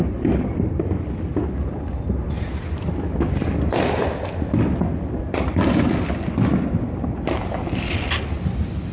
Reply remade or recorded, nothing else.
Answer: recorded